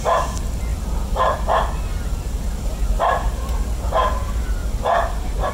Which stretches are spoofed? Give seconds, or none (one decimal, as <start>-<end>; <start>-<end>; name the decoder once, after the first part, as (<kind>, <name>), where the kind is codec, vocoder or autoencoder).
4.6-5.5 (vocoder, BigVGAN v2)